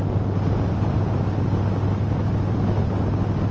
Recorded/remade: recorded